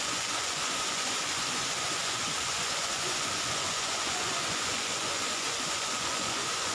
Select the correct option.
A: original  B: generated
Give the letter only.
B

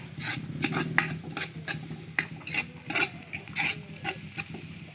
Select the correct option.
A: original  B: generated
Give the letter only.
A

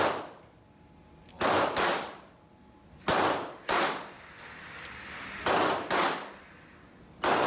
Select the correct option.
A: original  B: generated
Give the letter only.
A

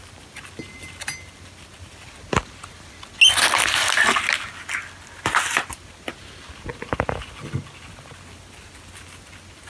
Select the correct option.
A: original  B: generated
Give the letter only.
A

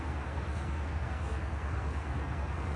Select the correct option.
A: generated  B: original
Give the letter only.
A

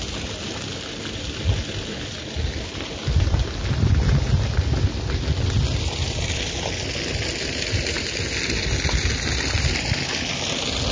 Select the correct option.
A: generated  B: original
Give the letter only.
B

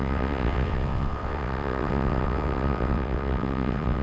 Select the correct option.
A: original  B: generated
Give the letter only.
B